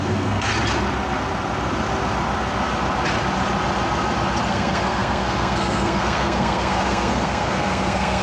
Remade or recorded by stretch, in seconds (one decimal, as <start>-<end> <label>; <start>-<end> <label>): 0.0-0.5 remade; 0.5-4.5 recorded; 4.5-8.2 remade